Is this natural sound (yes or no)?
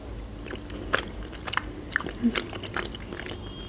yes